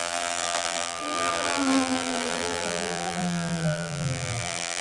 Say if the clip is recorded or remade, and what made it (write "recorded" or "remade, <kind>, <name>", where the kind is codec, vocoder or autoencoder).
remade, vocoder, BigVGAN v2